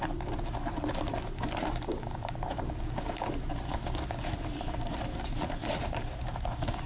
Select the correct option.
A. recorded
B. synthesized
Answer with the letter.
B